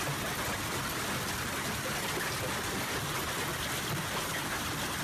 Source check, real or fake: real